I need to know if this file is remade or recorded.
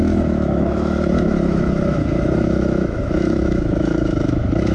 remade